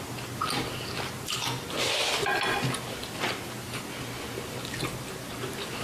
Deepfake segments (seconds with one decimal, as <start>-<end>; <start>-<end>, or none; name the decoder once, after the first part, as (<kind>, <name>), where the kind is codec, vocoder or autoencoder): none